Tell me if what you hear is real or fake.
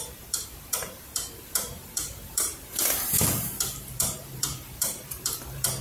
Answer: fake